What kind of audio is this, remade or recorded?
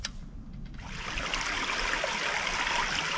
recorded